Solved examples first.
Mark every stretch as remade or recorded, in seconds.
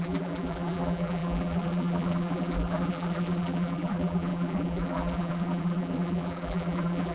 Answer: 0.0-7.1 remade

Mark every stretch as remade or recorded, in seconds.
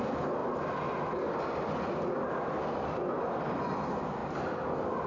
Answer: 0.0-4.2 recorded; 4.2-5.1 remade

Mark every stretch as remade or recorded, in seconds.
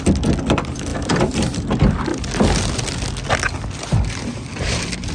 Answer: 0.0-0.9 recorded; 0.9-1.6 remade; 1.6-5.1 recorded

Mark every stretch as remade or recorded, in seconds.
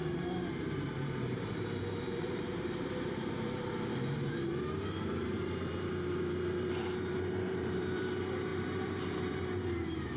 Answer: 0.0-10.2 remade